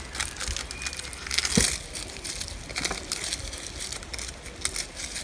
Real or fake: real